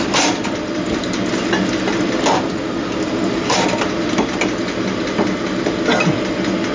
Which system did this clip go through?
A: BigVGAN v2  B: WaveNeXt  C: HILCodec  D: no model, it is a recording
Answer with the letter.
D